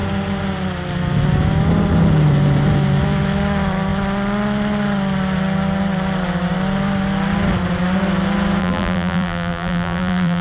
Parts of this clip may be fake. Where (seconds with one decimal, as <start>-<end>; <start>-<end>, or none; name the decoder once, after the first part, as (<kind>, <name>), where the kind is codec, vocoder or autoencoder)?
8.6-10.4 (vocoder, BigVGAN v2)